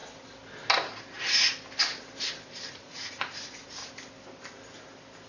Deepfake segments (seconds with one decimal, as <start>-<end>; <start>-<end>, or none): 2.7-3.8